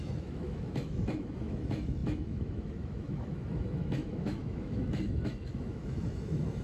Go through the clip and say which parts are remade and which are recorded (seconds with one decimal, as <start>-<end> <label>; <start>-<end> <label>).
0.0-6.6 remade